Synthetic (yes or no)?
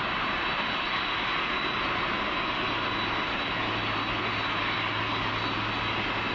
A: no